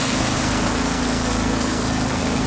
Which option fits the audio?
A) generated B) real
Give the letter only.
A